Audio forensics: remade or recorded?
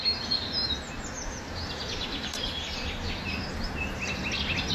recorded